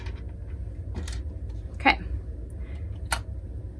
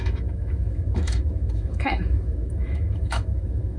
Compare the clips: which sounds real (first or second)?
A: first